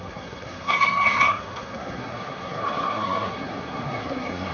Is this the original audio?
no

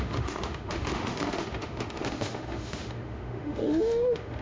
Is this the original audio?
no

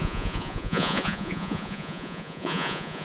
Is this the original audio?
no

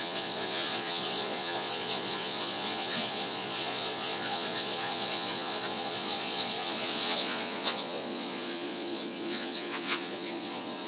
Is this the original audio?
no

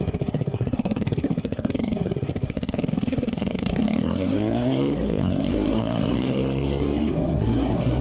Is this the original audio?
no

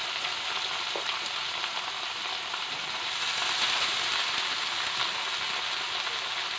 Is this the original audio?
yes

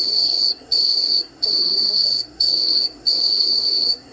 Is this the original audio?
no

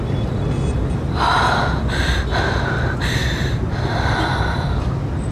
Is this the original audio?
yes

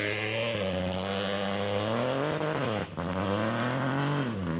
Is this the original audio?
yes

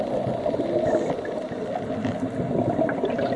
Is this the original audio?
yes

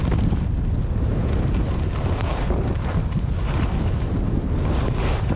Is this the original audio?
yes